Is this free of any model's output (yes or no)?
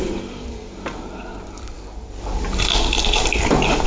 no